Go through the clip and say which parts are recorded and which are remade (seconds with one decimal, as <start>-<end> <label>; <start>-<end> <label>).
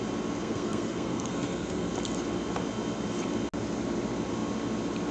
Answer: 0.0-0.4 recorded; 0.4-1.9 remade; 1.9-5.1 recorded